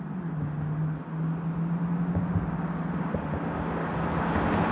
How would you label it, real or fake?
real